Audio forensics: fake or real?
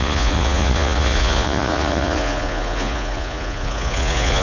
fake